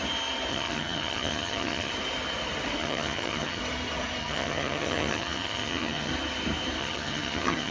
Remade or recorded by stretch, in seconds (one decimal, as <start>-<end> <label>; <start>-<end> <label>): 0.0-0.5 recorded; 0.5-1.9 remade; 1.9-2.8 recorded; 2.8-3.6 remade; 3.6-4.2 recorded; 4.2-6.1 remade; 6.1-6.8 recorded; 6.8-7.7 remade